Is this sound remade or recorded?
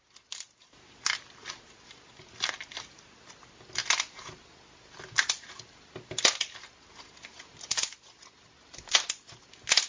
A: recorded